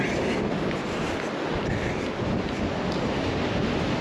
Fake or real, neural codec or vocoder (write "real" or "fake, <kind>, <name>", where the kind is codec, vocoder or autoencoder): real